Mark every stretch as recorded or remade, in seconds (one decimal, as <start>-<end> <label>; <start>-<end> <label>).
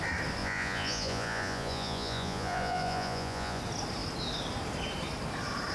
0.0-0.4 recorded; 0.4-3.6 remade; 3.6-5.7 recorded